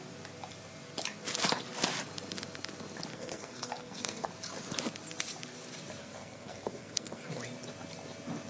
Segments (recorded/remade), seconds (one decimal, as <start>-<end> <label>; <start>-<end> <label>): 0.0-3.1 recorded; 3.1-4.3 remade; 4.3-6.0 recorded; 6.0-7.3 remade; 7.3-8.5 recorded